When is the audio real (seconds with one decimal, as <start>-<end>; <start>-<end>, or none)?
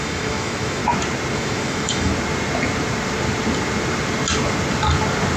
0.8-1.3; 2.1-5.4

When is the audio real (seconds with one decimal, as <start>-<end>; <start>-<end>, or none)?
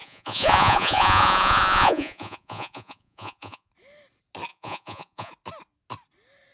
3.7-4.5; 5.3-6.5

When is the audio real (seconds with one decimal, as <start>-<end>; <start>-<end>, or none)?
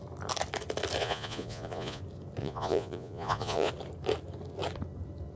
0.0-1.0; 2.0-2.4; 3.7-5.4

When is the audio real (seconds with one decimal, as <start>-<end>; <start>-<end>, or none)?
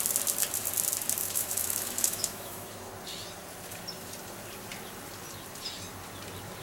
0.0-1.2; 2.9-6.6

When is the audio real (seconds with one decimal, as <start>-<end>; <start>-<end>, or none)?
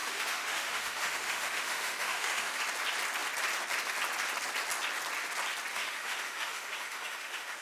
2.6-5.7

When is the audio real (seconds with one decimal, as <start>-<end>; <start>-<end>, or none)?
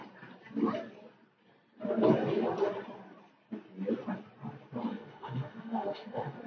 0.0-4.9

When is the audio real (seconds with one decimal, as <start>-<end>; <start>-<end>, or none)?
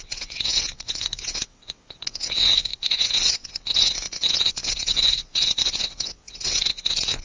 none